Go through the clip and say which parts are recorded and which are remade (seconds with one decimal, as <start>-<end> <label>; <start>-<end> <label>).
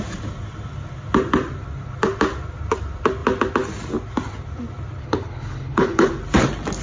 0.0-5.0 recorded; 5.0-6.1 remade; 6.1-6.8 recorded